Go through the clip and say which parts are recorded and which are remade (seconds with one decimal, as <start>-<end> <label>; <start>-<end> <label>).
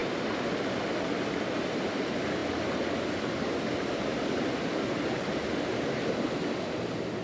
0.0-7.2 recorded